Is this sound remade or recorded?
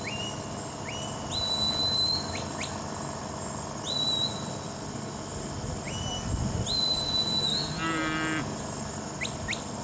recorded